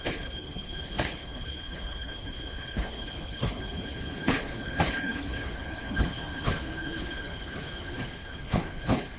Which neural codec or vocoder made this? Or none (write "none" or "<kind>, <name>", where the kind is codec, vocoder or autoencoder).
codec, HILCodec